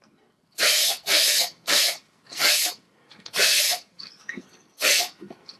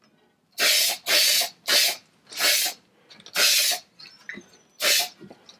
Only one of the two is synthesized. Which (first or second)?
first